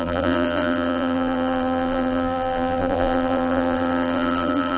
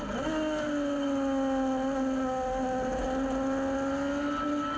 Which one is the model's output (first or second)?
first